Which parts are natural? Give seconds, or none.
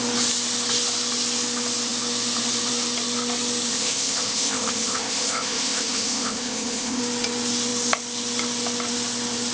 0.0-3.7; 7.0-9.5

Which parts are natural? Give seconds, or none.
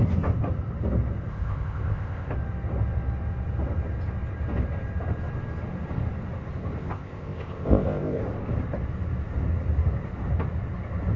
0.0-1.3; 2.3-6.8; 8.2-11.2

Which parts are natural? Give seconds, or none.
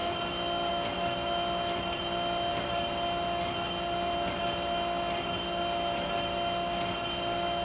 0.0-7.6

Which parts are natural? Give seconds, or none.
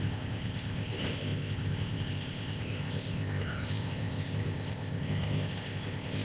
none